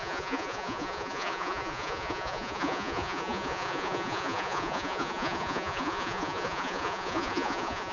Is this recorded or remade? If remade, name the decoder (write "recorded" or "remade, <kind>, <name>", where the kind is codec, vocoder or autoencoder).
remade, vocoder, Vocos